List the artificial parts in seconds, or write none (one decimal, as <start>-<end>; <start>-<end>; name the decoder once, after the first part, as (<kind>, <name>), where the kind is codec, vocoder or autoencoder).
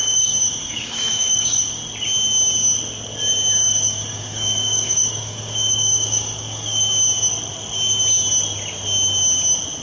0.0-1.8 (codec, DAC); 3.6-6.8